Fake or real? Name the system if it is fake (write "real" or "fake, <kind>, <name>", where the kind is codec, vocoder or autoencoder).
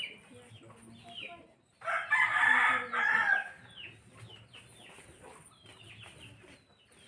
real